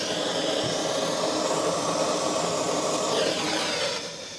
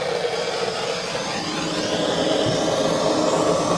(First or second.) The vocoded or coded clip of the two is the first